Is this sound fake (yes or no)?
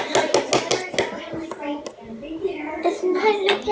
no